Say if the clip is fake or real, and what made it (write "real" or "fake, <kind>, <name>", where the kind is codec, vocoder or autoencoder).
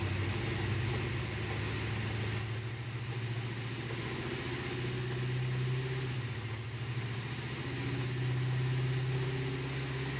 real